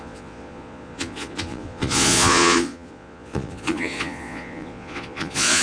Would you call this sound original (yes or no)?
no